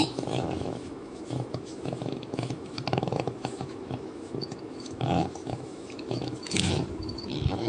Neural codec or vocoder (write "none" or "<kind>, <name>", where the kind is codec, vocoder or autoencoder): autoencoder, DAC-VAE